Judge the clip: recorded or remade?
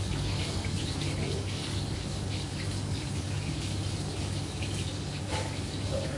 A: remade